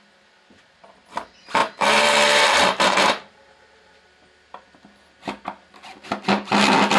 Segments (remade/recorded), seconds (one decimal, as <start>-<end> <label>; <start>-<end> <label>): 0.0-1.6 recorded; 1.6-3.9 remade; 3.9-7.0 recorded